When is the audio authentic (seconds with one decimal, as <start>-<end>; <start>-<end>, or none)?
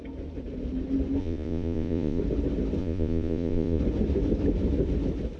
0.0-1.2; 2.2-2.8; 3.8-5.4